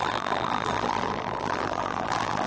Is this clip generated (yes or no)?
yes